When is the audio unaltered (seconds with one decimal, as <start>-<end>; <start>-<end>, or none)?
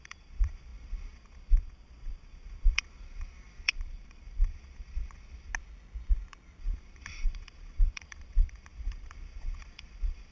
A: 5.5-6.6